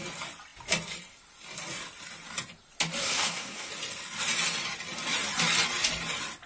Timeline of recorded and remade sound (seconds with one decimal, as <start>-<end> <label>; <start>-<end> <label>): 0.0-3.0 recorded; 3.0-3.7 remade; 3.7-6.5 recorded